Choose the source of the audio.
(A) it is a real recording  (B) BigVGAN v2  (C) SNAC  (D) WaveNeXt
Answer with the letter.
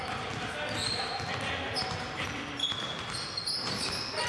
A